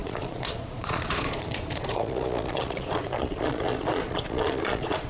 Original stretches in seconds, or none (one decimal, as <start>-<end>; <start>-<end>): none